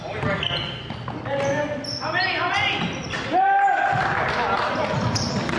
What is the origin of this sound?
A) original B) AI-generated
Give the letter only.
A